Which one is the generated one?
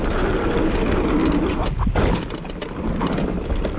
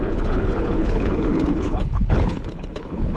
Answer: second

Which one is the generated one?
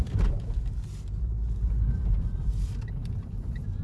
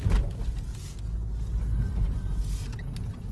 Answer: first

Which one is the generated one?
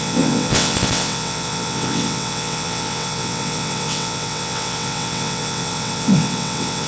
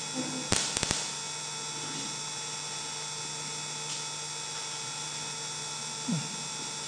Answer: first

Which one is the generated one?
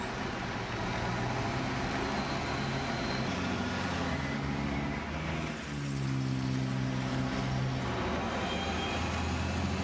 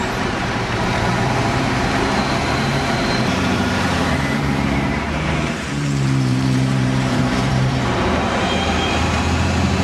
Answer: second